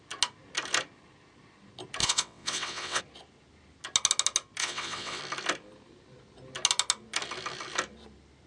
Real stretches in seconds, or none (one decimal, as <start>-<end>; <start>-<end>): 0.0-2.0; 3.0-4.6; 5.2-8.5